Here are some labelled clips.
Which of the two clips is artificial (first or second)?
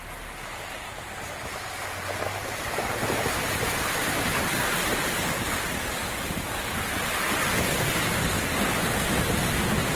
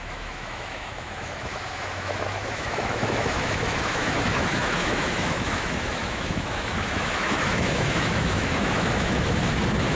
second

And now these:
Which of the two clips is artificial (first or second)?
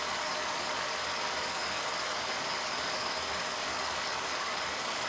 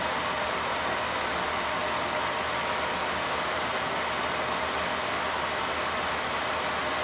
first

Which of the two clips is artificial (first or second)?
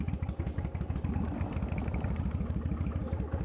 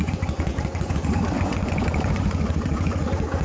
second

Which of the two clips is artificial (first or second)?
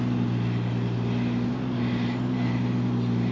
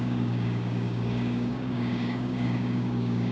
second